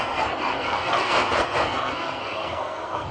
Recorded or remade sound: remade